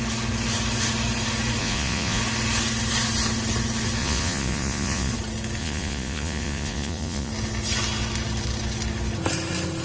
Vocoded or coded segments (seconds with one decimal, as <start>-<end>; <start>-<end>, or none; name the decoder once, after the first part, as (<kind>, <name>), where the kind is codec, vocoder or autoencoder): 1.6-2.2 (vocoder, Vocos); 4.0-5.1; 5.6-7.3